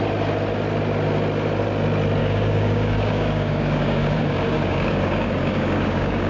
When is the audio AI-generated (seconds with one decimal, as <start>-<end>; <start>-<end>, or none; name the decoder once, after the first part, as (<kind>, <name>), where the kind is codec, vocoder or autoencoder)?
2.2-6.3 (codec, DAC)